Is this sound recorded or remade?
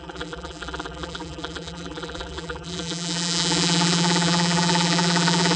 remade